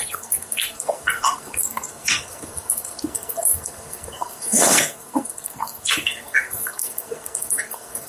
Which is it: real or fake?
fake